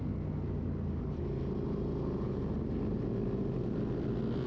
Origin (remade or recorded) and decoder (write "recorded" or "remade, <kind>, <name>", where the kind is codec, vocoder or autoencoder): recorded